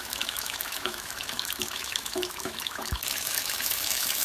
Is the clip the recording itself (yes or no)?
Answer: no